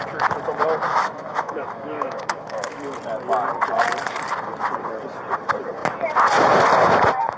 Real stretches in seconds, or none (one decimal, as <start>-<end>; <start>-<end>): 0.0-0.9; 2.8-7.4